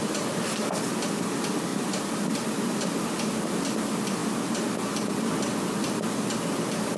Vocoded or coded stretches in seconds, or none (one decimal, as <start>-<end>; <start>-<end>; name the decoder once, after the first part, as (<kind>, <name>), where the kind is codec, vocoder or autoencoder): none